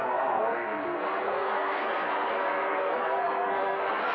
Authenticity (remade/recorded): remade